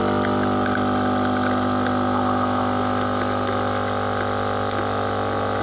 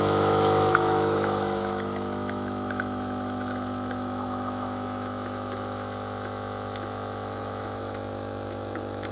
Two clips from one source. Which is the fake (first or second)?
second